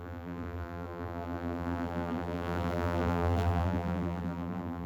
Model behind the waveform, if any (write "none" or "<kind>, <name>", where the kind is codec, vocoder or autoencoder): vocoder, BigVGAN v2